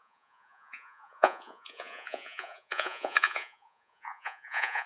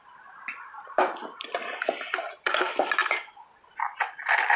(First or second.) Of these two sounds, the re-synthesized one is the first